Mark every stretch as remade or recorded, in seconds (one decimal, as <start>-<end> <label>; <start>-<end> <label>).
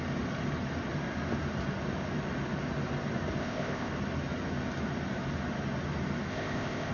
0.0-3.4 recorded; 3.4-3.9 remade; 3.9-6.3 recorded; 6.3-6.9 remade